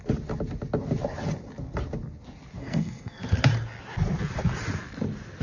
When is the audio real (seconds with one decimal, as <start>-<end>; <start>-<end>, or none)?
0.0-2.6; 3.2-5.4